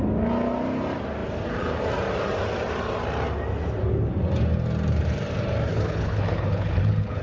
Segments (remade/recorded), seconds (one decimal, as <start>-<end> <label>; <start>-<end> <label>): 0.0-5.7 recorded; 5.7-7.2 remade